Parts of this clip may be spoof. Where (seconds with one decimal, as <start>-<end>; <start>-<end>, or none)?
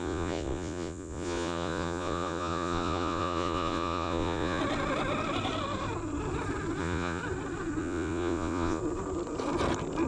0.0-4.6; 6.8-7.2; 7.8-8.8